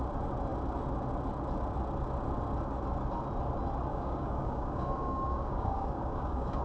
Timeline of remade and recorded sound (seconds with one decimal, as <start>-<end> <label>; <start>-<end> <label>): 0.0-3.9 recorded; 3.9-6.6 remade